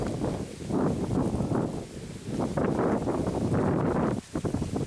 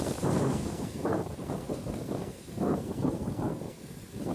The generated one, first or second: second